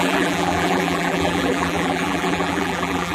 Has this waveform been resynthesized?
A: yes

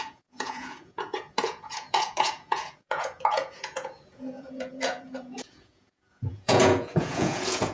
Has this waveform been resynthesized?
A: yes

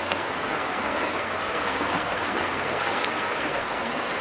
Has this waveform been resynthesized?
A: yes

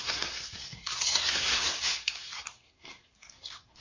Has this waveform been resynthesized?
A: yes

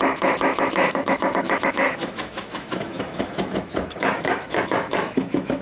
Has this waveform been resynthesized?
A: yes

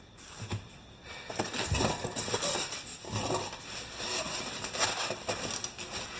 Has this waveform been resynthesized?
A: no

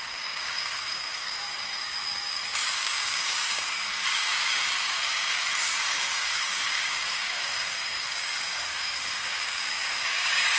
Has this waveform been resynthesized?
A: yes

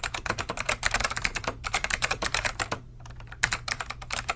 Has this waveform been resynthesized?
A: yes